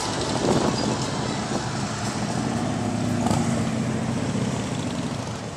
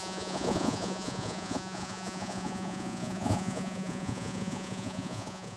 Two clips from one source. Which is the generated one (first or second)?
second